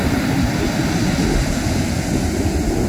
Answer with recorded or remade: recorded